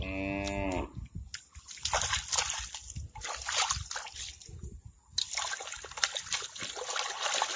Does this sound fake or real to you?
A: real